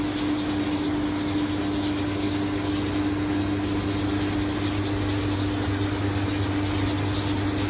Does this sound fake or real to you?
real